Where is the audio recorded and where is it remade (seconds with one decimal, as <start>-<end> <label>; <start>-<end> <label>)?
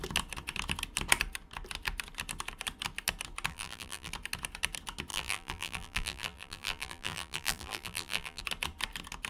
0.0-3.5 recorded; 3.5-4.1 remade; 4.1-5.1 recorded; 5.1-8.4 remade; 8.4-9.3 recorded